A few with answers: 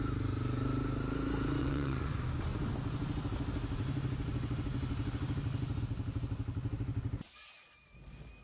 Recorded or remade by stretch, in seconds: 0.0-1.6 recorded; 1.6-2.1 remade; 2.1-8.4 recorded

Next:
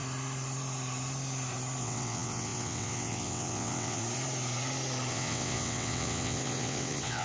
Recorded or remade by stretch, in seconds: 0.0-1.8 recorded; 1.8-4.0 remade; 4.0-5.1 recorded; 5.1-7.2 remade

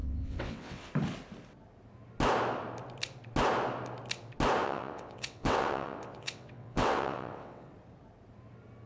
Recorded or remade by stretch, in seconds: 0.0-0.9 remade; 0.9-4.6 recorded; 4.6-7.7 remade; 7.7-8.9 recorded

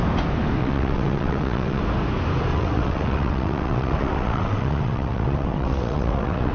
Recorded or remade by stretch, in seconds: 0.0-0.6 recorded; 0.6-1.8 remade; 1.8-2.5 recorded; 2.5-6.5 remade